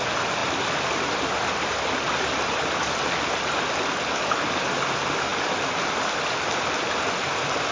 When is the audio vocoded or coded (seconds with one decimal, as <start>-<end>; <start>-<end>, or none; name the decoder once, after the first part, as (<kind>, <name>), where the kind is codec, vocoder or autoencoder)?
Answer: none